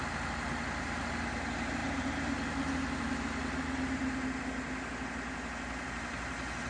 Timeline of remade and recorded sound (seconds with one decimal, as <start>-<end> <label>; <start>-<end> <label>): 0.0-6.7 recorded